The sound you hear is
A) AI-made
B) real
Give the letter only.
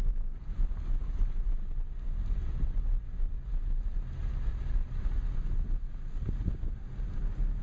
B